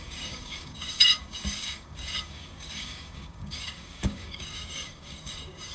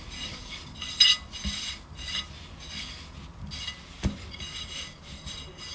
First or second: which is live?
second